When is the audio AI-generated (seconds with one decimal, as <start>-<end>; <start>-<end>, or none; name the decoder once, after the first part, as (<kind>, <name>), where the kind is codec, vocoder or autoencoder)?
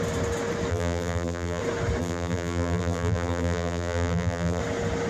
0.7-1.6 (vocoder, BigVGAN v2); 2.0-4.6